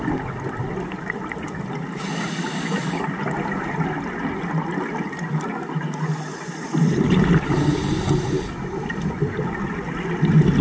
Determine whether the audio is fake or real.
real